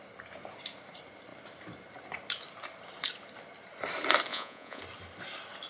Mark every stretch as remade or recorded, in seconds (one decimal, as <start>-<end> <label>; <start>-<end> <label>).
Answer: 0.0-4.3 recorded; 4.3-4.8 remade; 4.8-5.7 recorded